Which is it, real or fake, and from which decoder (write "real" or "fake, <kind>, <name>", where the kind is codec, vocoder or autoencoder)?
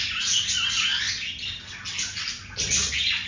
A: real